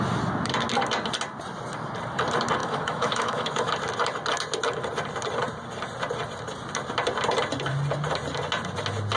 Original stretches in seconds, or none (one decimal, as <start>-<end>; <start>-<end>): 0.0-2.6; 3.7-9.2